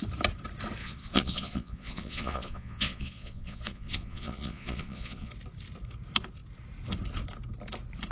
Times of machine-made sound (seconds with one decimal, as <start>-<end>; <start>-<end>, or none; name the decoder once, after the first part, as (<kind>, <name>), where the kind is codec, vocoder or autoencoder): 0.8-5.3 (vocoder, Vocos)